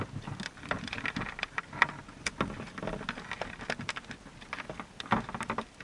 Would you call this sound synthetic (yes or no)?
no